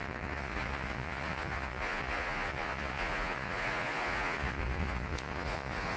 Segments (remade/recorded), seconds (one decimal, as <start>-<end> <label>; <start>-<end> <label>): 0.0-6.0 remade